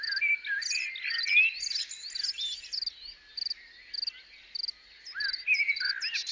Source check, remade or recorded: recorded